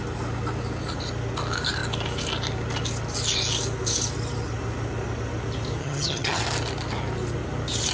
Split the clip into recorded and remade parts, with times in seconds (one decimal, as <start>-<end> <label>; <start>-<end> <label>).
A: 0.0-5.8 recorded; 5.8-6.4 remade; 6.4-7.9 recorded